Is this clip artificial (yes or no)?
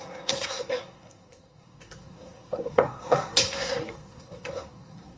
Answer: yes